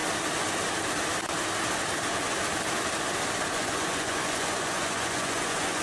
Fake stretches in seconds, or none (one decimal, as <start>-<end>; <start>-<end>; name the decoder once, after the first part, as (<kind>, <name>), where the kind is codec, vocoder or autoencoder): 3.5-5.8 (vocoder, Vocos)